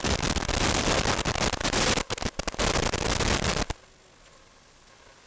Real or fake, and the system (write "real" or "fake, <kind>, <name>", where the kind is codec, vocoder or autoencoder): real